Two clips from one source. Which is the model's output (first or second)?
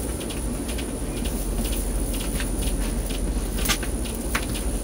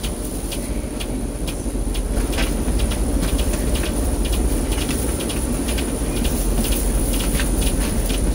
second